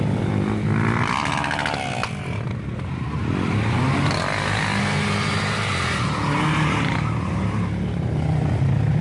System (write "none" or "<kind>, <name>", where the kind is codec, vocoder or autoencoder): none